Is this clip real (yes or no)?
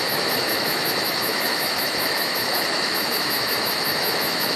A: no